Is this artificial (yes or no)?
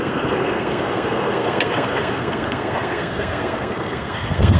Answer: yes